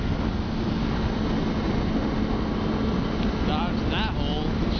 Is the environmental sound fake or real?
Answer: real